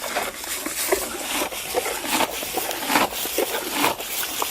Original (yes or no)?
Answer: yes